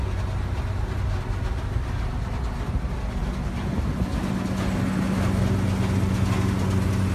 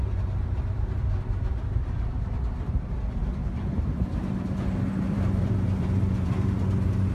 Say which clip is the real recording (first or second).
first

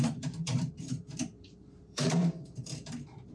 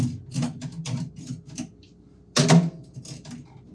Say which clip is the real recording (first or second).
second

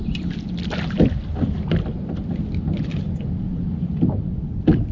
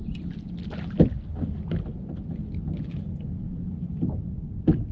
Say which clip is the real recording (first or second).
second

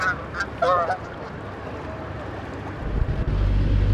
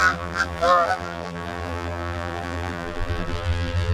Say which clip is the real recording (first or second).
first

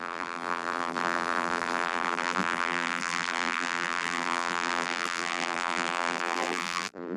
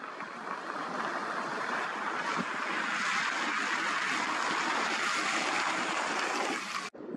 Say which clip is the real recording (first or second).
second